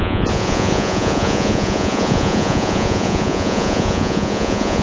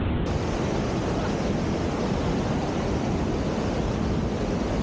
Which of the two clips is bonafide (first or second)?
second